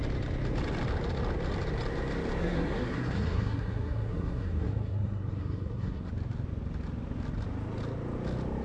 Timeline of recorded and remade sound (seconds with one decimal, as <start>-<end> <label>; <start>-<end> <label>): 0.0-2.4 recorded; 2.4-6.1 remade; 6.1-8.6 recorded